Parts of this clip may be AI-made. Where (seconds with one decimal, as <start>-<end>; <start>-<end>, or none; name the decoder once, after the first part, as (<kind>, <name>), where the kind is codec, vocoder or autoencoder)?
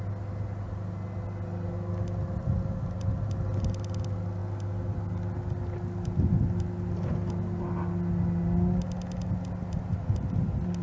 none